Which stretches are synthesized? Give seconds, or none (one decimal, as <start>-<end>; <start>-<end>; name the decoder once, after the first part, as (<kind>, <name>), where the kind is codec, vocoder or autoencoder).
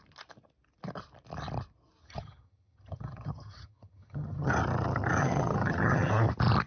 2.0-4.5 (vocoder, HiFi-GAN); 5.2-6.1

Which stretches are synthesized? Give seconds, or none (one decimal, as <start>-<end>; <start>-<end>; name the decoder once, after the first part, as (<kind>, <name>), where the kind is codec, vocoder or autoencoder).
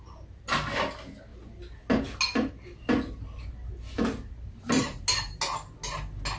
none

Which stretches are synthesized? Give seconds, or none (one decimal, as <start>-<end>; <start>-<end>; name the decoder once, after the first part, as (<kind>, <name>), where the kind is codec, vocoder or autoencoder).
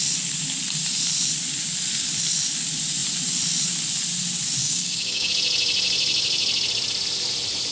4.6-5.3 (codec, DAC)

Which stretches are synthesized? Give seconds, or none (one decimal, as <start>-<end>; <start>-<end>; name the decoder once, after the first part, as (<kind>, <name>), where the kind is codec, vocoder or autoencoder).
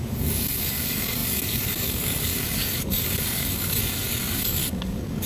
0.0-5.3 (codec, DAC)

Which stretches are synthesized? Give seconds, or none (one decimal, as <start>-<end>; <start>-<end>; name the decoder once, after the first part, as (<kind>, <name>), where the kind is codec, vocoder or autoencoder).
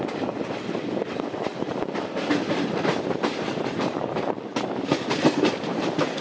1.5-5.2 (vocoder, BigVGAN v2)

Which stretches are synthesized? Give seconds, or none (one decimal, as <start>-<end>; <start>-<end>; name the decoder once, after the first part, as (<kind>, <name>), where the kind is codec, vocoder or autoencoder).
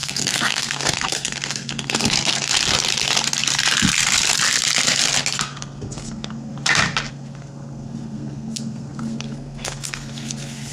0.0-2.6 (codec, SNAC); 5.4-6.5; 7.1-10.7